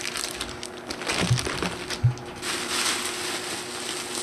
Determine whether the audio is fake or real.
real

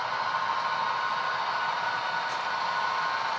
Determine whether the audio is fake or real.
real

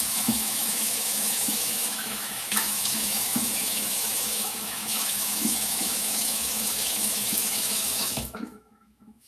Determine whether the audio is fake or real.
fake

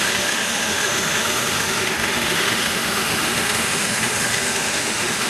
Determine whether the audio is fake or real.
fake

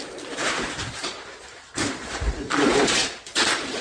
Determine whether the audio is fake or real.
fake